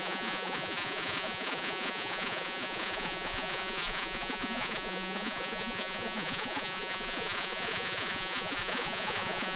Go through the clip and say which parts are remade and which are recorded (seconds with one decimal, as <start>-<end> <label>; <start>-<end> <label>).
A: 0.0-9.6 remade